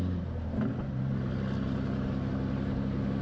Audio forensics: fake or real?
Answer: real